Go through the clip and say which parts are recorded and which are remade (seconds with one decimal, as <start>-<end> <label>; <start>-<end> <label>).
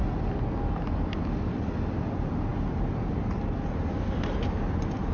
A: 0.0-5.1 recorded